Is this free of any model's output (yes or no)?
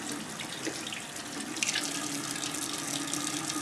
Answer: yes